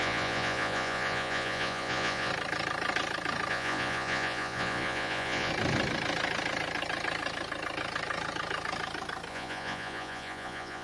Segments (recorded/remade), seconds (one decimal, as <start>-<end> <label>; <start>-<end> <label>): 0.0-2.3 remade; 2.3-3.5 recorded; 3.5-5.5 remade; 5.5-9.3 recorded; 9.3-10.8 remade